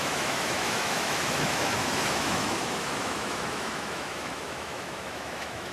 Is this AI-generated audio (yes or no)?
yes